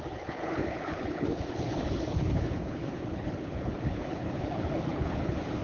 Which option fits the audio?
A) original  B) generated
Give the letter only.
B